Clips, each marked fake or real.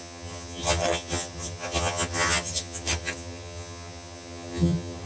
fake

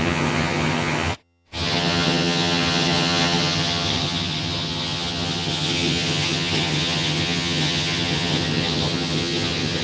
fake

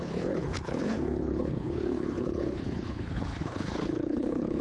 fake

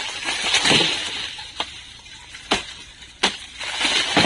real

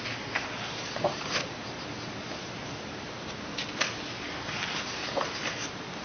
real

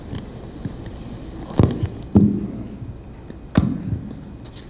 real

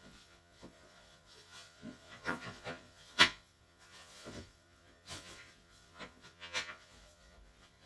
fake